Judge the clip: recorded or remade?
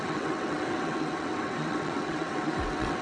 remade